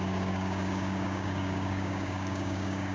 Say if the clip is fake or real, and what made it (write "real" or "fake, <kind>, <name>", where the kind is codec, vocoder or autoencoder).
fake, codec, DAC